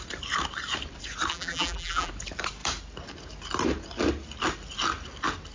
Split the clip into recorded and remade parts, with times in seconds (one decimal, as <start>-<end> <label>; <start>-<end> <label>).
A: 0.0-1.3 recorded; 1.3-2.1 remade; 2.1-5.5 recorded